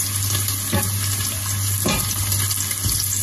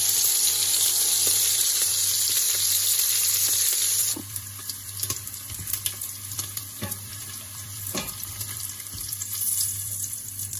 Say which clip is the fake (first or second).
second